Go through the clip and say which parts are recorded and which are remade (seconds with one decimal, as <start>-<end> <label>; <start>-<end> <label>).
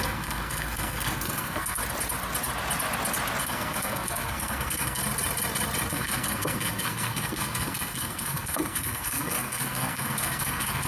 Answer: 0.0-1.8 remade; 1.8-3.4 recorded; 3.4-5.0 remade; 5.0-5.9 recorded; 5.9-10.9 remade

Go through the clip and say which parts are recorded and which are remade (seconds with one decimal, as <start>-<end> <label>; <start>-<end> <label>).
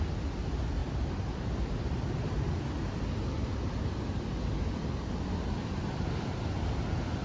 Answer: 0.0-7.2 recorded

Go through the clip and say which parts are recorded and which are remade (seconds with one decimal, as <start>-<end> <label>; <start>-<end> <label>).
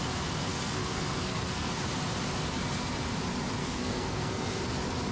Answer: 0.0-0.5 recorded; 0.5-1.7 remade; 1.7-3.6 recorded; 3.6-4.6 remade; 4.6-5.1 recorded